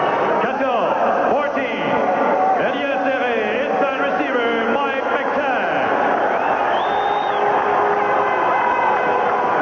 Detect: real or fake real